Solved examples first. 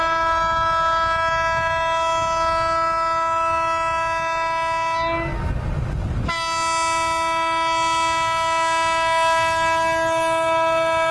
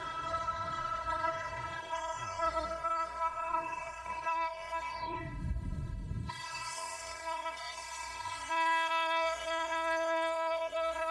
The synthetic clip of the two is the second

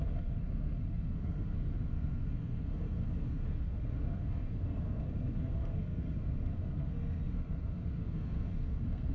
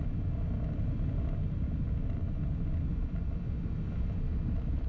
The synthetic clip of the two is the first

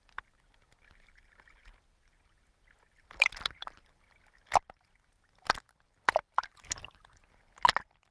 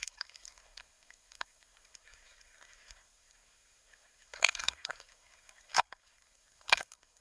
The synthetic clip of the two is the second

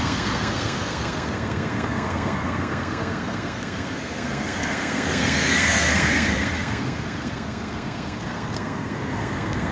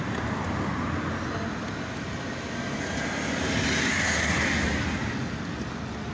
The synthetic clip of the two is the first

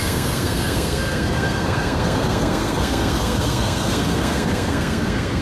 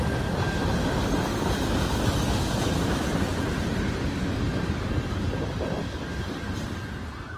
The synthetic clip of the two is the first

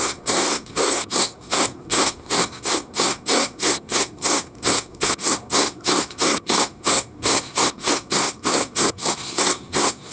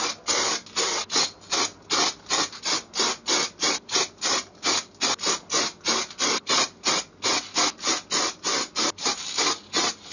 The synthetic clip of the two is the first